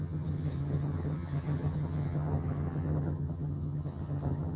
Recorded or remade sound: remade